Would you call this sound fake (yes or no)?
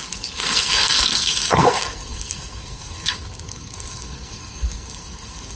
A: yes